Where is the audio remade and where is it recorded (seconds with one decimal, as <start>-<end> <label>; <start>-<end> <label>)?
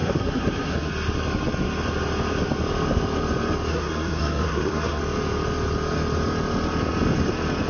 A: 0.0-0.9 remade; 0.9-3.7 recorded; 3.7-5.0 remade; 5.0-7.7 recorded